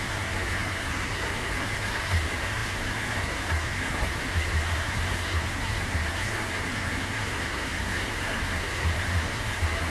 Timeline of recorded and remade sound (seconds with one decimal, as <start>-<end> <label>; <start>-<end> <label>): 0.0-9.9 remade